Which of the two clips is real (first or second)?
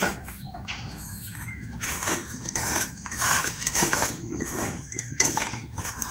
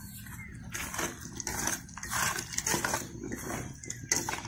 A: second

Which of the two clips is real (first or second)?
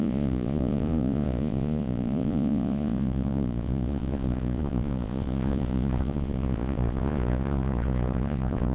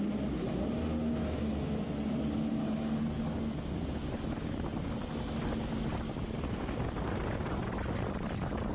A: second